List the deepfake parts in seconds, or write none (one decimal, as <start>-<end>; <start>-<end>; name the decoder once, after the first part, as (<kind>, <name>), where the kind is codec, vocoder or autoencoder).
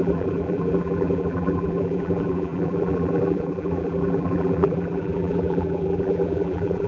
0.0-6.9 (vocoder, BigVGAN v2)